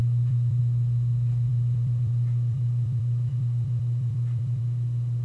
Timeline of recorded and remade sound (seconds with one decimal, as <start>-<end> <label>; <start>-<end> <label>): 0.0-0.6 remade; 0.6-1.5 recorded; 1.5-4.6 remade; 4.6-5.2 recorded